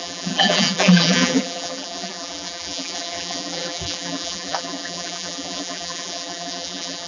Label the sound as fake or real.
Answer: fake